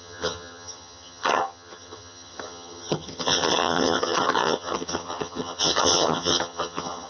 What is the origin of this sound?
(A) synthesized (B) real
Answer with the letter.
A